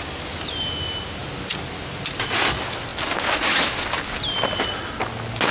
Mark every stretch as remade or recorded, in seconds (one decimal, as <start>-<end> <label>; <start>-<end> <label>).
0.0-5.5 recorded